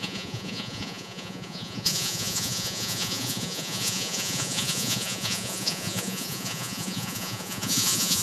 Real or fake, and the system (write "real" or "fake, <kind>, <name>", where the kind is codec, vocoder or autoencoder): fake, vocoder, Vocos